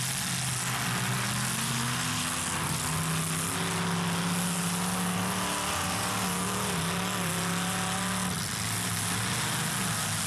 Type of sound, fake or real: real